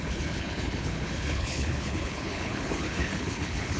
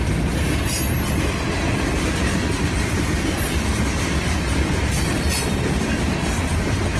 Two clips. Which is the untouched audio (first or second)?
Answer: second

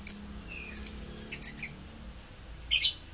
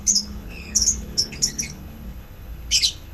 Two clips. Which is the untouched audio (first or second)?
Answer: first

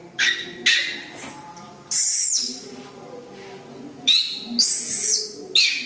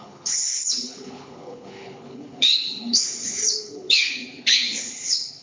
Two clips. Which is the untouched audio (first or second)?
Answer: first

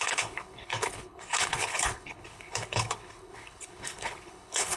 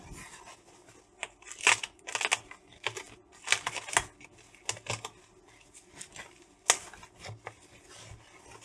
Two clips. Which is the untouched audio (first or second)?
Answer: second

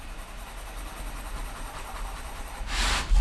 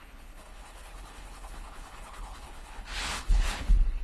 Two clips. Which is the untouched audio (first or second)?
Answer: first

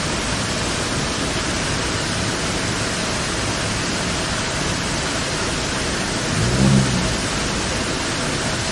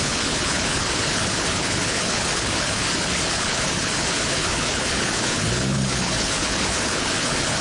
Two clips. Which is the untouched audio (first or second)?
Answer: first